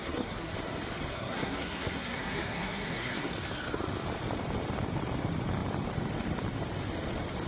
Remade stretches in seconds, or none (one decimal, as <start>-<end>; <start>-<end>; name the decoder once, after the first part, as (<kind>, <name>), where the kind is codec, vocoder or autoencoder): 0.0-0.5 (codec, SNAC); 1.1-3.3